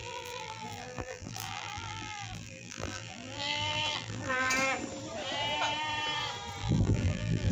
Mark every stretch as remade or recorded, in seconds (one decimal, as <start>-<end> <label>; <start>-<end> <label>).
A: 0.0-4.5 remade; 4.5-6.6 recorded; 6.6-7.5 remade